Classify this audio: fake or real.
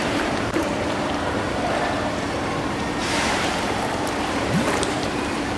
fake